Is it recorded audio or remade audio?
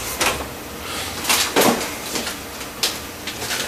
recorded